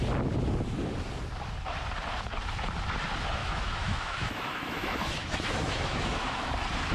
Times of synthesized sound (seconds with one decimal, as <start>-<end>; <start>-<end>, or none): 3.4-6.5